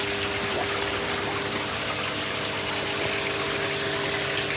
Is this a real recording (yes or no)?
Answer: yes